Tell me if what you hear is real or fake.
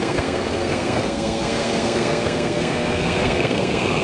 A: fake